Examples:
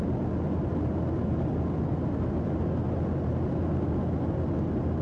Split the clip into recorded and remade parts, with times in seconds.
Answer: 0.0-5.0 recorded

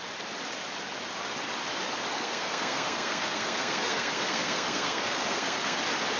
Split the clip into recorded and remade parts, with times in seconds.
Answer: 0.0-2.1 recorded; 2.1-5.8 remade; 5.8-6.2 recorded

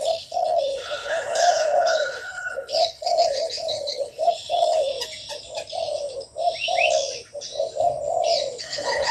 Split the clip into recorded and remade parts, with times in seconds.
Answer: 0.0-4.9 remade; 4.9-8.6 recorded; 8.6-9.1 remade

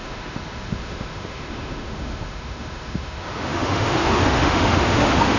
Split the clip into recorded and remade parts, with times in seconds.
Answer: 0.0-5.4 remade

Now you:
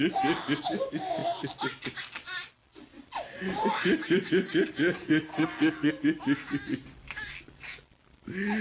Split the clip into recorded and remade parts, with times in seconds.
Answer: 0.0-5.3 recorded; 5.3-5.9 remade; 5.9-8.6 recorded